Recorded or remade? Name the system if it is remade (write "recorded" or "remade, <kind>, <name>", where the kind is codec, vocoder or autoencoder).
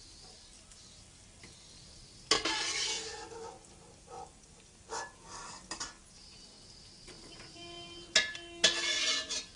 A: recorded